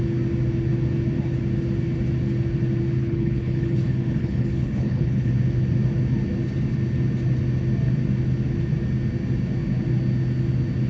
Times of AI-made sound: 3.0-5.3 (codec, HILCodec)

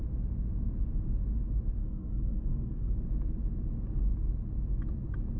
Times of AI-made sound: 1.8-3.0 (codec, SNAC)

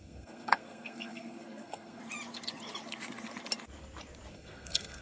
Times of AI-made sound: 0.0-2.0 (codec, SNAC); 4.3-5.0

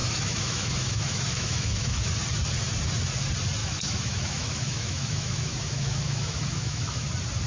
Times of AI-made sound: 0.0-2.1 (autoencoder, DAC-VAE); 3.6-7.1

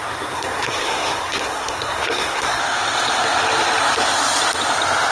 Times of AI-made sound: 0.0-2.6 (codec, SNAC)

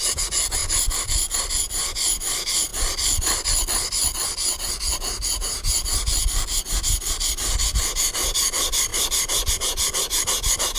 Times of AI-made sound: 0.6-1.5 (vocoder, BigVGAN v2); 8.9-9.5

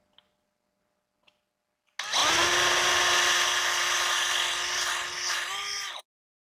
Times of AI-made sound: none

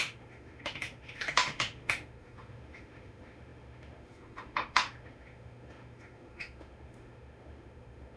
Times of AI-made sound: 0.0-8.2 (autoencoder, DAC-VAE)